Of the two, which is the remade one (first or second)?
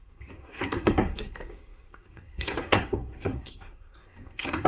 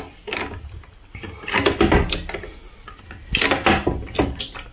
first